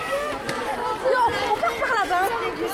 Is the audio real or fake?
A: real